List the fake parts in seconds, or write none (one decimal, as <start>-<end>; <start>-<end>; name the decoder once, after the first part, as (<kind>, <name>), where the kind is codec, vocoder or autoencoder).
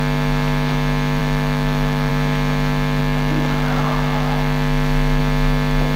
1.2-2.1 (autoencoder, DAC-VAE); 3.0-5.2